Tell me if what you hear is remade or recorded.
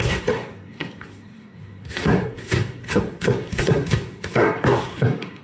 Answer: remade